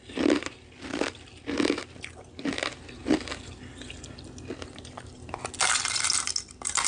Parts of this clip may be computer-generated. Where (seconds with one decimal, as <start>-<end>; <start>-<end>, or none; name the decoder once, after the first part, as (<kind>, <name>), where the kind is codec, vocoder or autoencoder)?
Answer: none